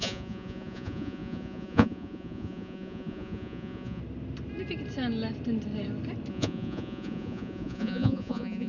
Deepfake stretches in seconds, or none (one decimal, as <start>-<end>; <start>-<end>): 0.0-4.0; 6.3-8.7